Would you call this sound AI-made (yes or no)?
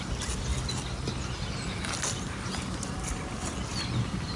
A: no